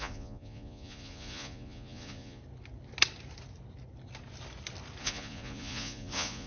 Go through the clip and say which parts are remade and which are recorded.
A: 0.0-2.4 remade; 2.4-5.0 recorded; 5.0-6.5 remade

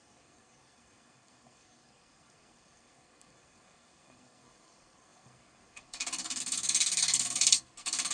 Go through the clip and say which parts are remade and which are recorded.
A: 0.0-8.1 remade

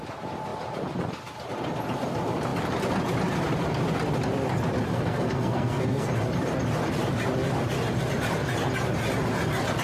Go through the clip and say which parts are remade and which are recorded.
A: 0.0-4.9 recorded; 4.9-6.1 remade; 6.1-9.8 recorded

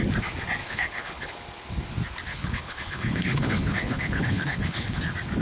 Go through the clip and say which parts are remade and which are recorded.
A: 0.0-0.6 recorded; 0.6-1.3 remade; 1.3-2.3 recorded; 2.3-5.0 remade; 5.0-5.4 recorded

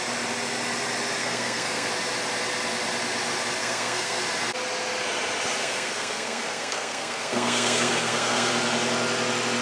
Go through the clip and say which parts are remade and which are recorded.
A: 0.0-1.2 recorded; 1.2-1.9 remade; 1.9-3.6 recorded; 3.6-4.2 remade; 4.2-5.6 recorded; 5.6-8.5 remade; 8.5-9.6 recorded

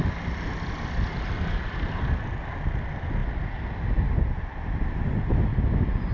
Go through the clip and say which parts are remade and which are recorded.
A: 0.0-6.1 recorded

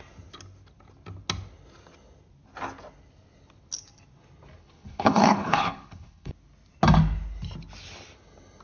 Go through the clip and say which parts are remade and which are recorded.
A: 0.0-4.6 recorded; 4.6-6.3 remade; 6.3-8.6 recorded